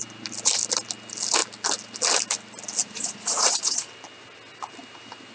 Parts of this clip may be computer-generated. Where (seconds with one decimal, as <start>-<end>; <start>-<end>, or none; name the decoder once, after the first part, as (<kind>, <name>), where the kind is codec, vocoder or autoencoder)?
2.8-3.9 (vocoder, Vocos)